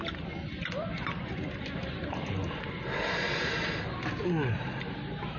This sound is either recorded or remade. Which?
recorded